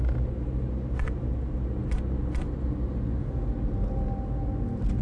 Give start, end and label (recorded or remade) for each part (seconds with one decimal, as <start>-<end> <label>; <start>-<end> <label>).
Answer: 0.0-5.0 recorded